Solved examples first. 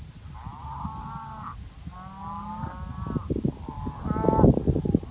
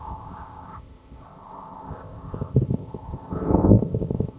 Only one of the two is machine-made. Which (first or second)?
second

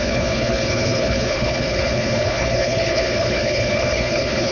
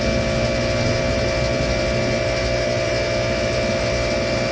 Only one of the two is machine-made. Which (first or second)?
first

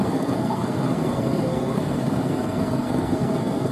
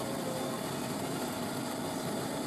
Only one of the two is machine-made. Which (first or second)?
first